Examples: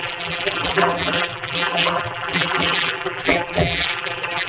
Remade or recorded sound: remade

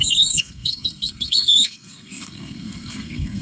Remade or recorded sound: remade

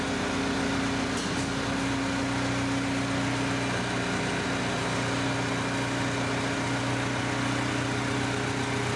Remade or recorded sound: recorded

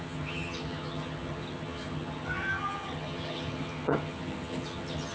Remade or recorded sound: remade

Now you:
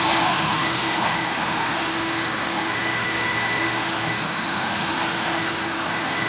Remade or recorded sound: remade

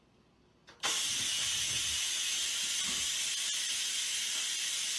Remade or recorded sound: recorded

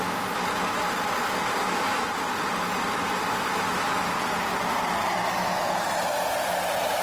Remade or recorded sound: recorded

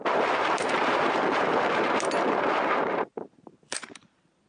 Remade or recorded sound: remade